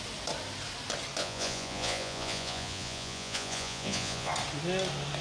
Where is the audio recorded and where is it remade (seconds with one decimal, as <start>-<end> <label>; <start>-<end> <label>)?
0.0-1.2 recorded; 1.2-4.3 remade; 4.3-5.2 recorded